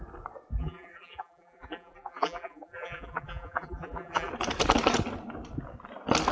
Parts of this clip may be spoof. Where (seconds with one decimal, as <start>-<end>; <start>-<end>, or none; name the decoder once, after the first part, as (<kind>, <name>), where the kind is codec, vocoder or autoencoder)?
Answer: 0.5-4.3 (vocoder, BigVGAN v2)